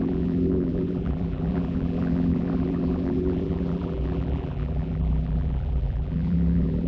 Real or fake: fake